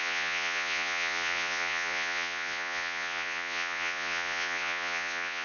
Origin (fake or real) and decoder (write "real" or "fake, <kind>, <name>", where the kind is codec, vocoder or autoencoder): fake, vocoder, Vocos